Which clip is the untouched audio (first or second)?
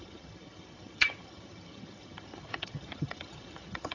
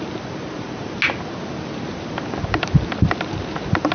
second